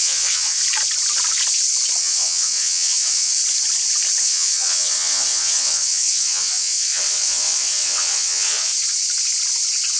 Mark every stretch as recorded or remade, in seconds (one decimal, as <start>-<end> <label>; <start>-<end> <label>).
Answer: 0.0-0.6 remade; 0.6-2.0 recorded; 2.0-3.4 remade; 3.4-4.2 recorded; 4.2-8.7 remade; 8.7-10.0 recorded